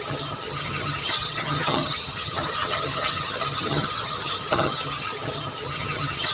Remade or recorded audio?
remade